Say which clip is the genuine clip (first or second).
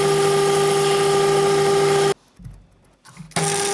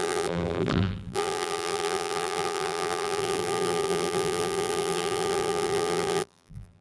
first